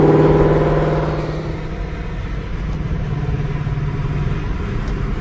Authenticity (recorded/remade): recorded